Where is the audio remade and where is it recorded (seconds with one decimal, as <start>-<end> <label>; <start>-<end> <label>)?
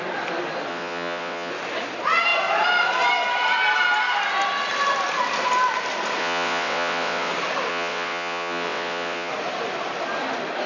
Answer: 0.0-0.7 recorded; 0.7-1.5 remade; 1.5-6.2 recorded; 6.2-7.3 remade; 7.3-7.7 recorded; 7.7-9.3 remade; 9.3-10.7 recorded